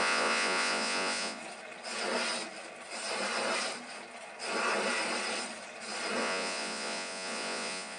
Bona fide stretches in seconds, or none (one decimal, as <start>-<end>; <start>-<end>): 1.4-6.2